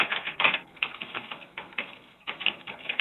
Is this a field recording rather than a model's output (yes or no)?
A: no